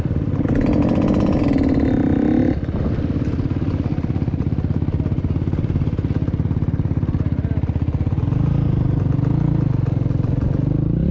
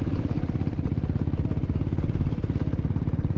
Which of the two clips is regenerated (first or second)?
second